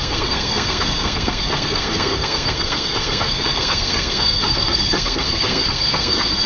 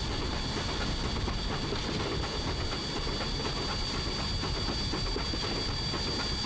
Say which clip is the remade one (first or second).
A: first